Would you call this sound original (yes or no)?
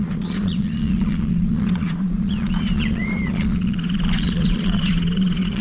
no